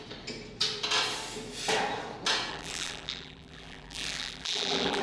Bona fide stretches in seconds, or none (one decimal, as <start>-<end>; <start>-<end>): 0.0-2.5